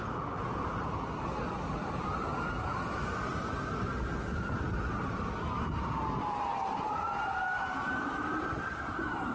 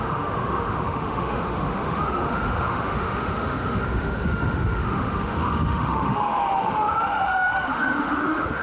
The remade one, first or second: second